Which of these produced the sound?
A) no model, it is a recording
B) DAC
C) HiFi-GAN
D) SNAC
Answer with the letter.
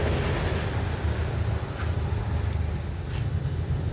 A